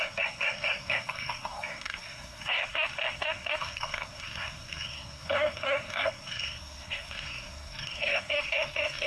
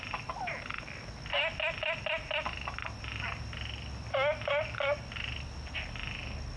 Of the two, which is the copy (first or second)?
first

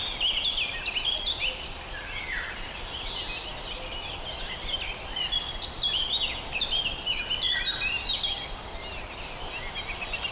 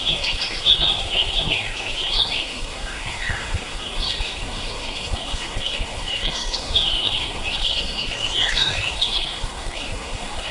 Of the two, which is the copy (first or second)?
second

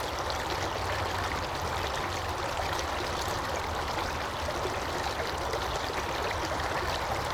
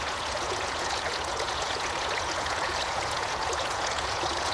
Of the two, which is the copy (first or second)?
second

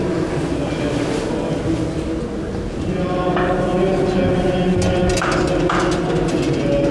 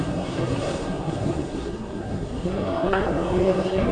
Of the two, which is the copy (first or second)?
second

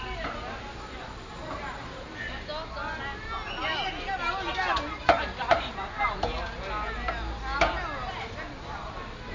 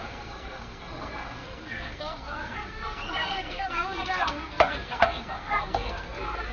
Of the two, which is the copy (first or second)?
second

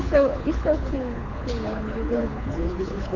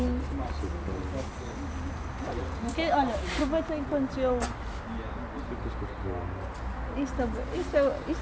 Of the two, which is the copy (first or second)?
first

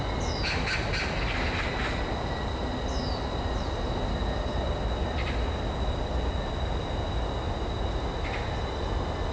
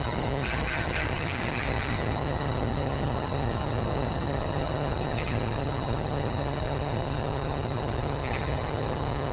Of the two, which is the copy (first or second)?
second